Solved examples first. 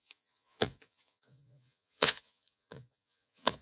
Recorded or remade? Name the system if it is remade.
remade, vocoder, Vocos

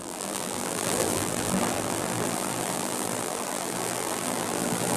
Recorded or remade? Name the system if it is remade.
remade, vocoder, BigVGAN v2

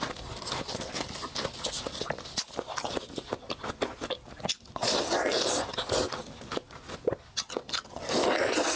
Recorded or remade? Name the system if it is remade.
recorded